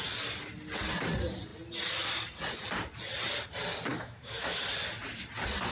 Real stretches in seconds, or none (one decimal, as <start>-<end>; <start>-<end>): 0.0-3.9; 4.6-5.7

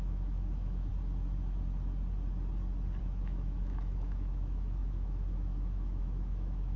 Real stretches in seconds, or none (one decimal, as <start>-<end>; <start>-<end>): 0.9-3.0

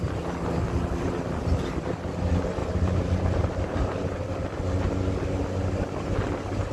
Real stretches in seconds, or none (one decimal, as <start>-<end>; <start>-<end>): 0.0-2.6; 4.3-6.7

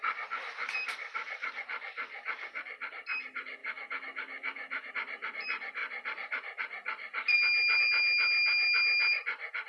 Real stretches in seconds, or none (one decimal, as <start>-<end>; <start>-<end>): 0.0-3.6; 4.9-9.7

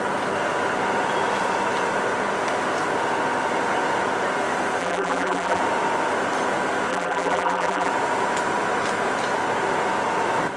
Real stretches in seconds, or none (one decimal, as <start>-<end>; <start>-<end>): 0.0-4.8; 5.6-6.9; 7.9-10.6

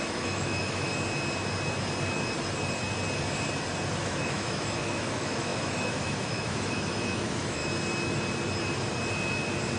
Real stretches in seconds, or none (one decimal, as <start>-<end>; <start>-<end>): 0.9-4.0; 7.6-9.8